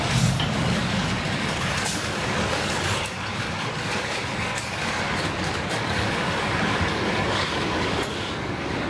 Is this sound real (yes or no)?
no